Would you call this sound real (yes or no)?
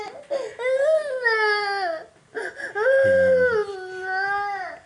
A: yes